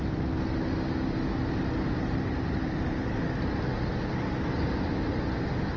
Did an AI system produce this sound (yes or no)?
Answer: no